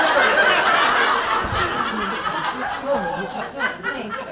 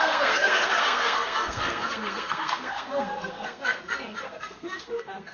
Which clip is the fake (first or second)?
second